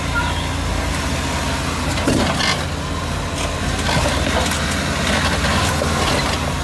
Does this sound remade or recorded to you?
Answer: recorded